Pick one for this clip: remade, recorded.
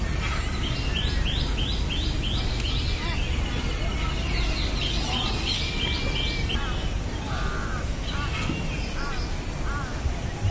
recorded